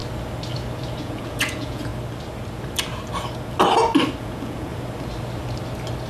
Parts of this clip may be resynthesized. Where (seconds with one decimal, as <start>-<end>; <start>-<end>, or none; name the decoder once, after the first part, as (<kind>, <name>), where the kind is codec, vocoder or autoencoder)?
1.0-1.9 (vocoder, Vocos); 4.2-4.7